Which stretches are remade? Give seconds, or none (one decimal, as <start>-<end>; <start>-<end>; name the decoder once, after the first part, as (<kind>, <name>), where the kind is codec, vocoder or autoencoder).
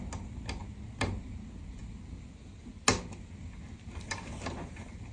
none